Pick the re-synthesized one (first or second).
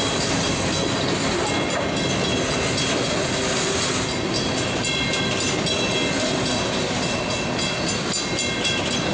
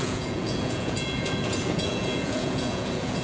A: second